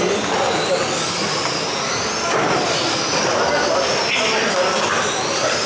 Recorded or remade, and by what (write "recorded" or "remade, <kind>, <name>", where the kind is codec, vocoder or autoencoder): recorded